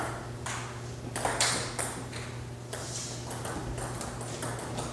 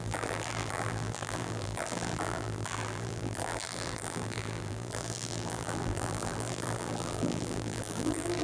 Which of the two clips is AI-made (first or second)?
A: second